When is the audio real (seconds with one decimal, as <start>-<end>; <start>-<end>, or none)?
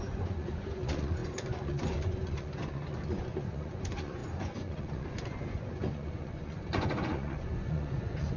none